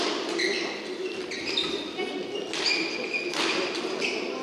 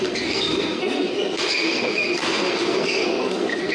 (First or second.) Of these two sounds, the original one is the first